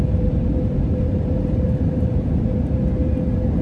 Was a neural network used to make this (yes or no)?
yes